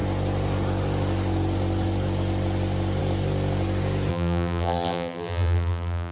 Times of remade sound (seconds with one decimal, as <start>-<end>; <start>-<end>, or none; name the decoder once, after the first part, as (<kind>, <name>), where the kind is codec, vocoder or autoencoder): 4.1-6.1 (vocoder, BigVGAN v2)